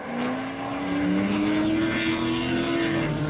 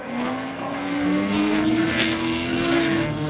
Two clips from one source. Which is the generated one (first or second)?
second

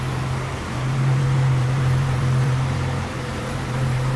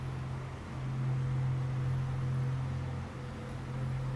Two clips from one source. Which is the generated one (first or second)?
first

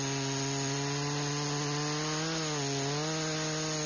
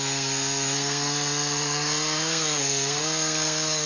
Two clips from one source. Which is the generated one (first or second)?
second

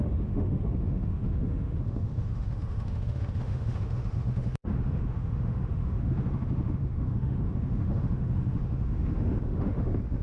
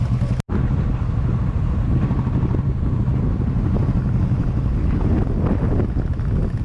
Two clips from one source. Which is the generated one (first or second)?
first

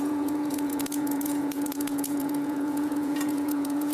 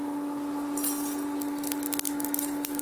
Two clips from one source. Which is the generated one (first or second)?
first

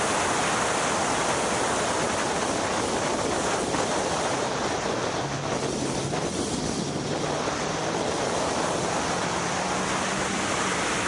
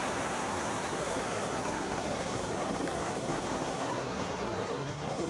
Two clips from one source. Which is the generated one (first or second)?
second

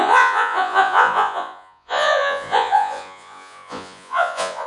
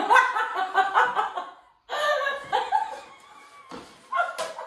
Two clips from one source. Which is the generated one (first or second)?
first